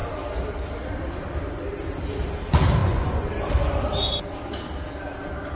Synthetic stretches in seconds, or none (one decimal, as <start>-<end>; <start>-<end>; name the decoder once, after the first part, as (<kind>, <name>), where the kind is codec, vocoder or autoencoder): 2.8-3.3 (vocoder, Vocos)